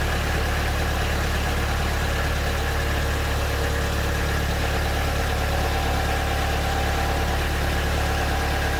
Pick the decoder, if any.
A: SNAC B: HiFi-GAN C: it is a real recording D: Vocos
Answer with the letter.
C